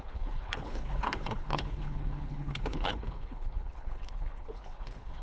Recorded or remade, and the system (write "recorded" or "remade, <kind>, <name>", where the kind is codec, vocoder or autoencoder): remade, codec, HILCodec